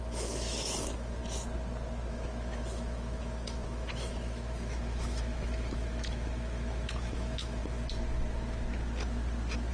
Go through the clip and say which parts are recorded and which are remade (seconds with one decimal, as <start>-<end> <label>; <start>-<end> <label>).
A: 0.0-1.2 remade; 1.2-2.1 recorded; 2.1-7.6 remade; 7.6-9.7 recorded